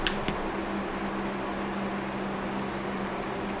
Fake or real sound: real